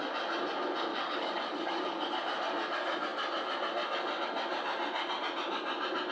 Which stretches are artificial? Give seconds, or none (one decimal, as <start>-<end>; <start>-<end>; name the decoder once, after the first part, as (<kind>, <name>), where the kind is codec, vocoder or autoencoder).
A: 0.9-2.1 (codec, DAC)